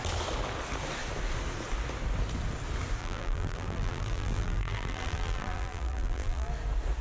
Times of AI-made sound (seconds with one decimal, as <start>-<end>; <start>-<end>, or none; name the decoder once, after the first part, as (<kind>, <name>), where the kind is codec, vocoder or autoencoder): 3.0-6.5 (vocoder, BigVGAN v2)